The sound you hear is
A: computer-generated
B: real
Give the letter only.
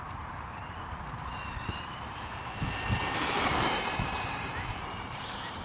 A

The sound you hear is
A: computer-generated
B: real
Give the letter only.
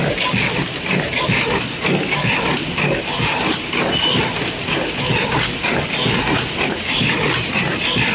B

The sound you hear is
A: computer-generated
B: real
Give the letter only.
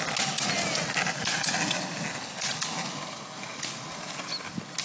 B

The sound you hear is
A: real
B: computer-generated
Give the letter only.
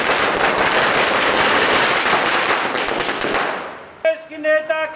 A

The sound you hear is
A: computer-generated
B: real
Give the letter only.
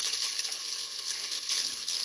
A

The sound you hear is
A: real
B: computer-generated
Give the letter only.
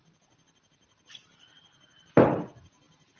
A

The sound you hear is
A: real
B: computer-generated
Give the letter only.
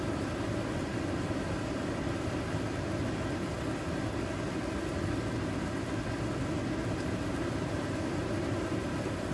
A